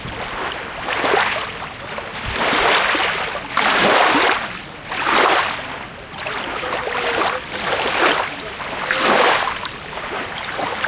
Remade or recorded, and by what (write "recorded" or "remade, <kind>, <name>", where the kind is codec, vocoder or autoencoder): recorded